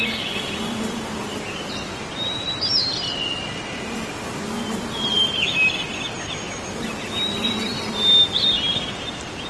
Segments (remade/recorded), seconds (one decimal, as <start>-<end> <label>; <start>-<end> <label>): 0.0-9.5 recorded